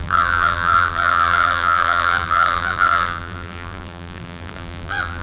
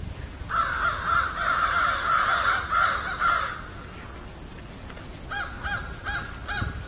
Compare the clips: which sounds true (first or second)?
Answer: second